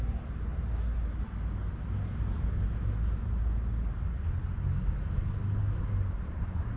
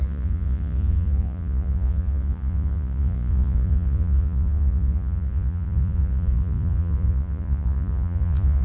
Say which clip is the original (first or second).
first